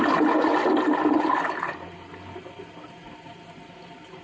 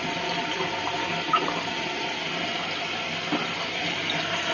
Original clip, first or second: first